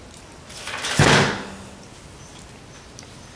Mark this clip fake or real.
real